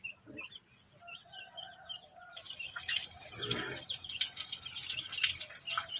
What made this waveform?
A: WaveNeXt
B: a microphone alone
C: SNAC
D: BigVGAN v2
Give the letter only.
B